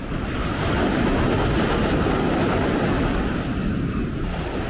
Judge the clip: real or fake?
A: real